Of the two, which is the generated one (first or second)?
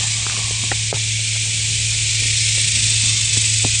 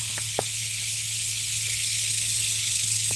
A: second